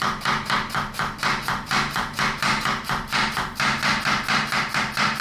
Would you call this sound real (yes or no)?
no